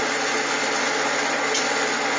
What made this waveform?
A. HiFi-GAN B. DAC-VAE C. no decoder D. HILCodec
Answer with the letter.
C